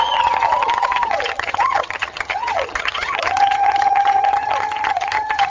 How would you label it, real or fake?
fake